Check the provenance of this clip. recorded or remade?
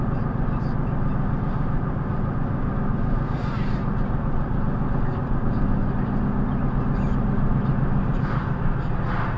recorded